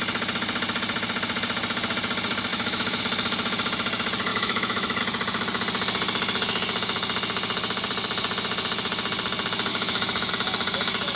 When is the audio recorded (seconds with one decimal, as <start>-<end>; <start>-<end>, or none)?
0.0-2.5; 3.0-4.3; 5.0-9.7; 10.3-11.2